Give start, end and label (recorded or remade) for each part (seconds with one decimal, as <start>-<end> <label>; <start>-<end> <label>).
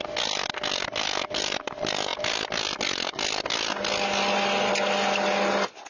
0.0-5.9 recorded